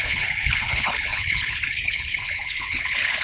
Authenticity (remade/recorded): remade